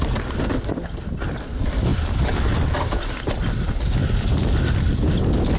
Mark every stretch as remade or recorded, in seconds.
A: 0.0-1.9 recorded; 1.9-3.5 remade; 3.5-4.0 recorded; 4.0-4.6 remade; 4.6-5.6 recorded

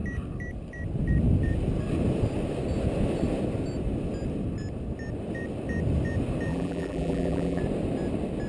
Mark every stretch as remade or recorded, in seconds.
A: 0.0-6.5 recorded; 6.5-7.6 remade; 7.6-8.5 recorded

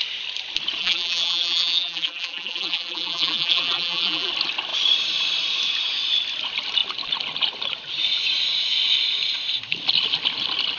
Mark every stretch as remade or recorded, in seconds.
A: 0.0-0.8 recorded; 0.8-4.3 remade; 4.3-10.8 recorded

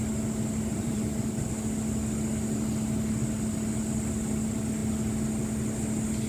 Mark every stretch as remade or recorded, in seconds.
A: 0.0-0.7 recorded; 0.7-1.5 remade; 1.5-6.3 recorded